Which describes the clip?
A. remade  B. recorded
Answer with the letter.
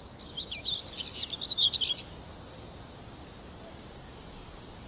A